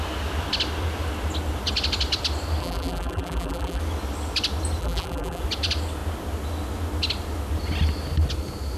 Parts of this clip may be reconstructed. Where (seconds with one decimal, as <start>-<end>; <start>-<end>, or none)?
2.6-3.8; 4.8-5.4